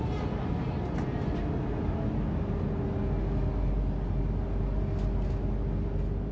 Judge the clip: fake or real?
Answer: real